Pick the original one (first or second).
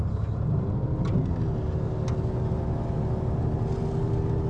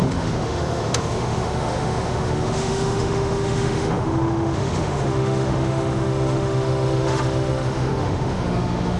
first